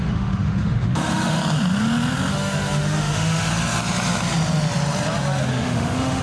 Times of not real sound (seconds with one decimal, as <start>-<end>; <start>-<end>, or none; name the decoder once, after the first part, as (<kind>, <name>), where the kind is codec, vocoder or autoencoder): 0.0-1.4 (autoencoder, DAC-VAE); 2.3-3.5; 5.5-6.2